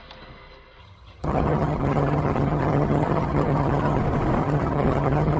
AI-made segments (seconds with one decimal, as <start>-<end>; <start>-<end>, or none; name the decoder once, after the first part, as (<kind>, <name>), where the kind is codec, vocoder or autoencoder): 0.8-4.0 (vocoder, HiFi-GAN); 4.4-5.4